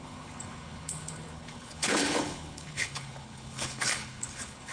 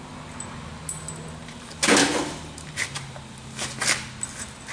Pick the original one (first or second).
second